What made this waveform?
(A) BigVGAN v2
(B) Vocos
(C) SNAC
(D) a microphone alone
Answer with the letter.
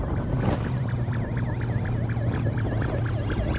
D